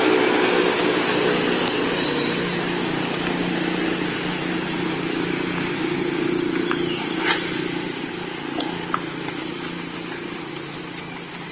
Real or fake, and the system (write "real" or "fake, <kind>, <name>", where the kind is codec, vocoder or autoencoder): real